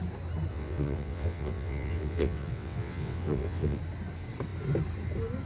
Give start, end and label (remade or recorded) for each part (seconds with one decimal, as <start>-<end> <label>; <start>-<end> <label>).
0.0-0.5 recorded; 0.5-3.8 remade; 3.8-5.5 recorded